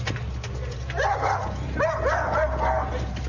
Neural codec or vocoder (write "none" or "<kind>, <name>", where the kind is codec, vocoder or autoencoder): none